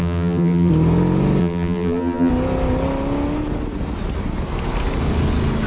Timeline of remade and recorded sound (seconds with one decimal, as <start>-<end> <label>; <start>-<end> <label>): 0.0-0.7 remade; 0.7-1.4 recorded; 1.4-2.3 remade; 2.3-5.7 recorded